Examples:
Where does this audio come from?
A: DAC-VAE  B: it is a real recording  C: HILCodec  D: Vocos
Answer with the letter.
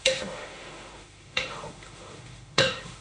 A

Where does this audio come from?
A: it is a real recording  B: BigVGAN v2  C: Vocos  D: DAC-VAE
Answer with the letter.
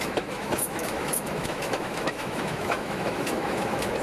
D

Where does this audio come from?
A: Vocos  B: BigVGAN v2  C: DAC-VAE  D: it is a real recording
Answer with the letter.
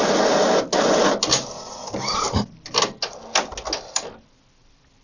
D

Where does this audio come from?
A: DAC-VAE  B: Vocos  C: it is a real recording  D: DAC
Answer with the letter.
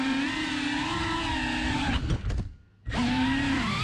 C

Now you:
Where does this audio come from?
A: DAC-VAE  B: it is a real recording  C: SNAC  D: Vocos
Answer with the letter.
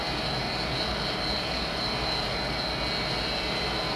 B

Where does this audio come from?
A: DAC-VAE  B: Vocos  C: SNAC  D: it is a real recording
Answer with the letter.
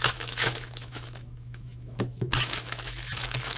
A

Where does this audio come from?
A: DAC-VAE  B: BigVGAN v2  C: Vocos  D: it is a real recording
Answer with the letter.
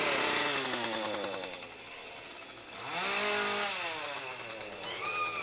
D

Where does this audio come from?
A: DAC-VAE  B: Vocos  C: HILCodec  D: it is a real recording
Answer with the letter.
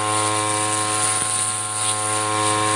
D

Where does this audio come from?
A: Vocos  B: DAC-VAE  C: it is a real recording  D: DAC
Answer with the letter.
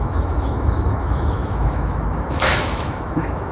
B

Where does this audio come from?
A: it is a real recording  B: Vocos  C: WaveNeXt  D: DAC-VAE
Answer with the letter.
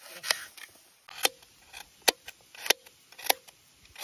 A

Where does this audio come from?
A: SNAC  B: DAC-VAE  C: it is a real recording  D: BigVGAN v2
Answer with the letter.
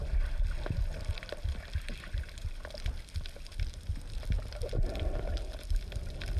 C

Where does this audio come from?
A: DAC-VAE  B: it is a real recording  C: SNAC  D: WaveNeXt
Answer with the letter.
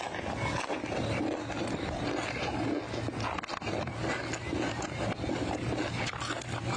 B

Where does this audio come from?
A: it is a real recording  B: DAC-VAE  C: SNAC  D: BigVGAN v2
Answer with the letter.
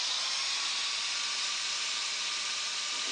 A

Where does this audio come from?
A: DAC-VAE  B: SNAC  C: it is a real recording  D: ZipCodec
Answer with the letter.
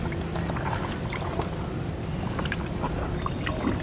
C